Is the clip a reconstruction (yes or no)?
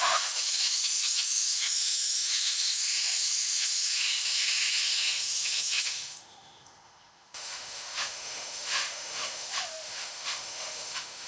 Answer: yes